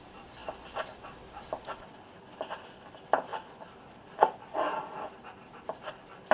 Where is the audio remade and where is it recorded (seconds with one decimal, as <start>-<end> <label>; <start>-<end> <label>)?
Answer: 0.0-6.3 recorded